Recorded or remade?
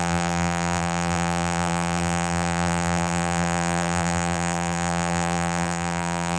remade